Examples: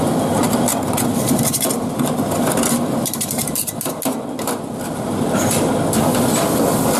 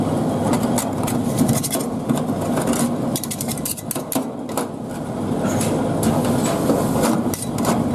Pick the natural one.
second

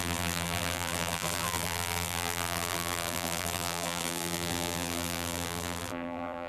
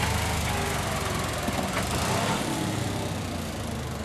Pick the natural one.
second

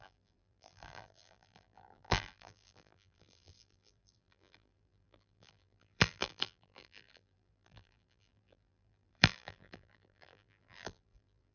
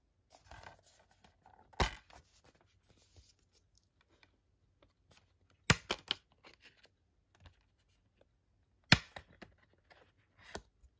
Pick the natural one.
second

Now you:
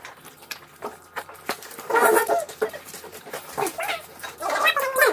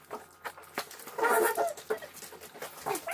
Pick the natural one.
second